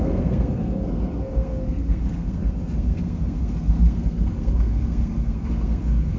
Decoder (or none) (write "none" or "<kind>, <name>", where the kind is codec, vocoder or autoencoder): codec, SNAC